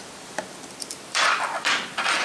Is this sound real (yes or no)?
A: no